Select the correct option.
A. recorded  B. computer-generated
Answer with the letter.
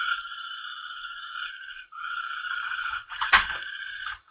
B